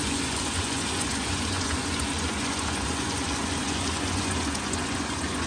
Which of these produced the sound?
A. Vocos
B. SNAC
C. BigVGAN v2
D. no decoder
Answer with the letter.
A